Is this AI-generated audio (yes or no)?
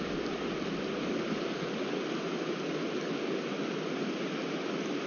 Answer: no